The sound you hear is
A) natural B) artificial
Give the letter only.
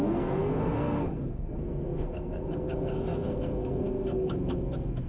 B